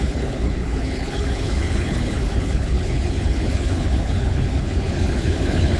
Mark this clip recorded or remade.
remade